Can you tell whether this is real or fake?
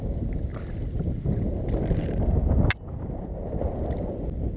real